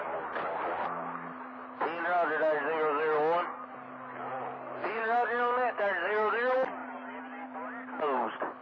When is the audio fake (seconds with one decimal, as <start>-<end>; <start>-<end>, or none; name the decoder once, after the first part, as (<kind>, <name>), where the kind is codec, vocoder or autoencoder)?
4.8-6.3 (codec, DAC)